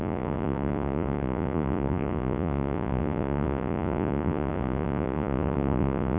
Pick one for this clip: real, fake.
fake